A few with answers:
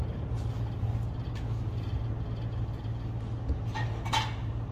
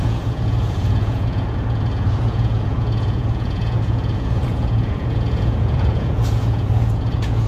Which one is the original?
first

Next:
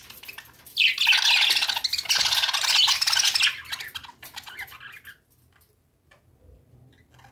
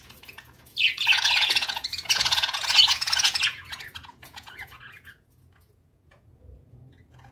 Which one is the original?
first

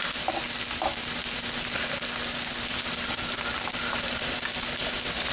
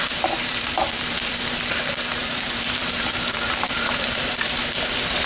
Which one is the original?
first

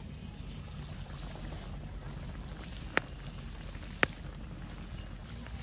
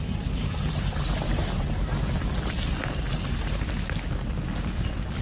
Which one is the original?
first